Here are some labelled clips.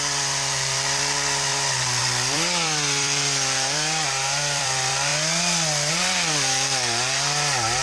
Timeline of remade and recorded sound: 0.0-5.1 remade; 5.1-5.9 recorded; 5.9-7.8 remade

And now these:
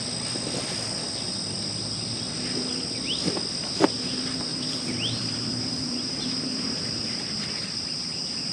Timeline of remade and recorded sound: 0.0-4.5 recorded; 4.5-6.8 remade; 6.8-8.5 recorded

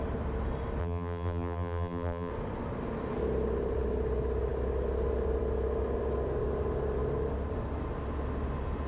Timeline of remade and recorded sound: 0.0-0.8 recorded; 0.8-2.3 remade; 2.3-8.9 recorded

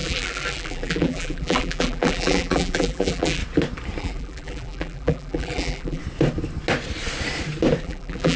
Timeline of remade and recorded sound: 0.0-3.4 remade; 3.4-4.0 recorded; 4.0-6.0 remade; 6.0-7.8 recorded; 7.8-8.4 remade